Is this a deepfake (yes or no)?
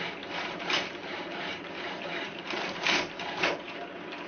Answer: yes